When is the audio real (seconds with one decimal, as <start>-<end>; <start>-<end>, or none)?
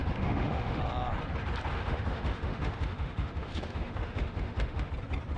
0.8-1.7; 4.9-5.4